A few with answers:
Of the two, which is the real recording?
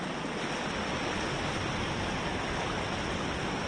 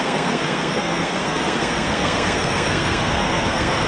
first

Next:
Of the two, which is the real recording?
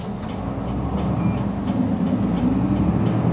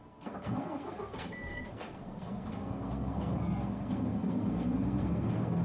first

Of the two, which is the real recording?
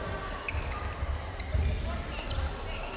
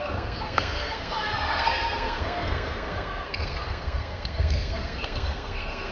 first